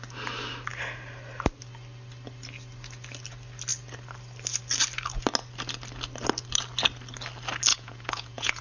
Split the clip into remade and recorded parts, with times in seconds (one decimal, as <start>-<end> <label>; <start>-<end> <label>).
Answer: 0.0-7.7 recorded; 7.7-8.6 remade